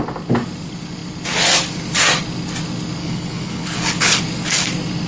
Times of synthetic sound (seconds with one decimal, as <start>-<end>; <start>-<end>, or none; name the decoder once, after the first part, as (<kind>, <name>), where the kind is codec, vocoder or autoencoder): 3.0-4.2 (codec, HILCodec)